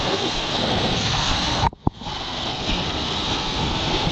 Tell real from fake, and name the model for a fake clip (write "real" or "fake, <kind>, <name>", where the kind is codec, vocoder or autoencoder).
fake, codec, SNAC